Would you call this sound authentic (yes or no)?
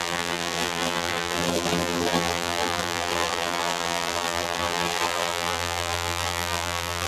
no